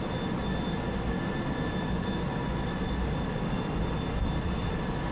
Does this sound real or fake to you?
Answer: real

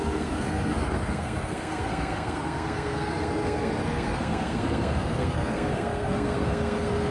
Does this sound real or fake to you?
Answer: fake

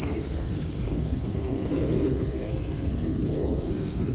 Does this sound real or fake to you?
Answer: fake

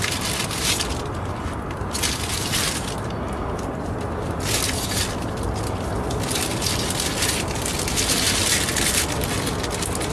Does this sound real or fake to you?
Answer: real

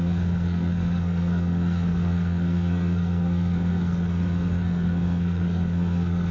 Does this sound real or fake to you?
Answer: fake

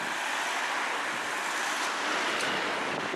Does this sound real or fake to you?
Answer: real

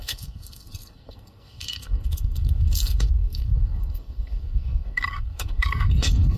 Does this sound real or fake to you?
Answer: fake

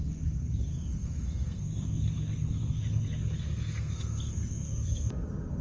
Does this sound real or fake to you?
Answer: fake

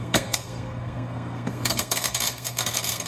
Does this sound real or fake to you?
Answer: fake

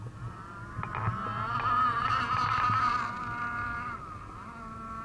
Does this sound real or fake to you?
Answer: real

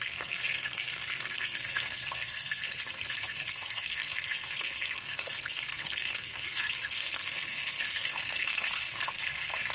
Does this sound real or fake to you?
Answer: fake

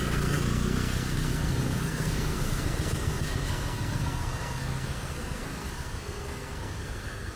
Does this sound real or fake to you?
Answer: fake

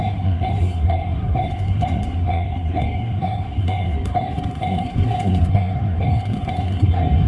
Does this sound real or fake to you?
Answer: fake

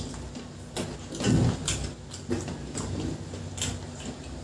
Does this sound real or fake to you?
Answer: real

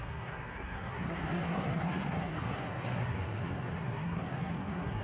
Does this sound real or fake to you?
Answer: fake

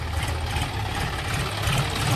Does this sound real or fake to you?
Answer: real